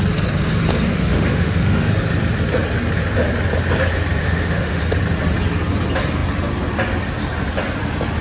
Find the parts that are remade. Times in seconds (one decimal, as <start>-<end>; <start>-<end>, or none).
0.9-1.9; 4.2-4.8